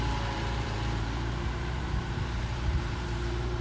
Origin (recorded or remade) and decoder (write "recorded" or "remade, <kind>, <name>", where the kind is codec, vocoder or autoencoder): remade, vocoder, BigVGAN v2